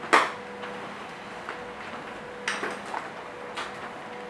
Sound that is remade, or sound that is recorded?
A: recorded